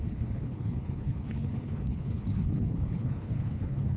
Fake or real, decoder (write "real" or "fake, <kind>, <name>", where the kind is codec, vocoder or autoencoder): fake, codec, HILCodec